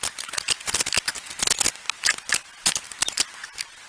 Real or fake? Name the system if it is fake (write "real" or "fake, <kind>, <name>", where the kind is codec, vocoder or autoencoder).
real